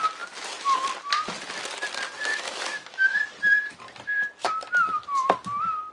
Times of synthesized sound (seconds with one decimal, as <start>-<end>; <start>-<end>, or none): 2.3-3.2